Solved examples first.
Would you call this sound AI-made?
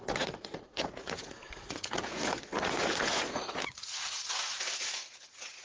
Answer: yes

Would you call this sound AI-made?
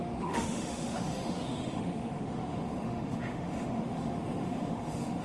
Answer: yes